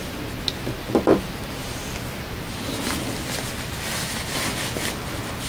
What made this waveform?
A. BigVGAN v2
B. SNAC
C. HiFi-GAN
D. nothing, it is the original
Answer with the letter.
D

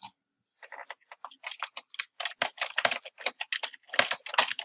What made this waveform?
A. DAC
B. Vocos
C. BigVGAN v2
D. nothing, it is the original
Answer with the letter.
D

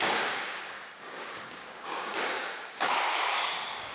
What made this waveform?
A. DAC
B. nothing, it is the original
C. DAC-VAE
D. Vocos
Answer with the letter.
A